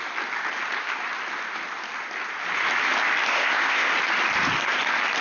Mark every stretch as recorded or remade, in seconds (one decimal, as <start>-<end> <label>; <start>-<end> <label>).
0.0-3.3 recorded; 3.3-3.9 remade; 3.9-5.2 recorded